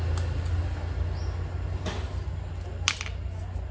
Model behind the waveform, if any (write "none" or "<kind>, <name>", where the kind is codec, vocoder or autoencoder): none